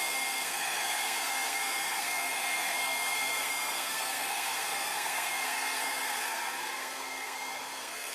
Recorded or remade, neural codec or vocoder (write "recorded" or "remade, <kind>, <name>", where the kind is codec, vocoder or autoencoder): remade, codec, SNAC